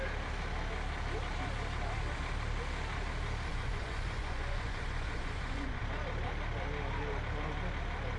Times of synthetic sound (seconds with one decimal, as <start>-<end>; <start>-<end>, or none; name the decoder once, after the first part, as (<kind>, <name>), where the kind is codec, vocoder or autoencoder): 3.5-5.8 (vocoder, Vocos)